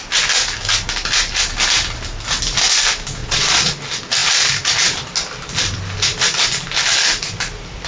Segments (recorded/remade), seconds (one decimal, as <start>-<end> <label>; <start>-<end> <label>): 0.0-3.2 recorded; 3.2-3.7 remade; 3.7-7.9 recorded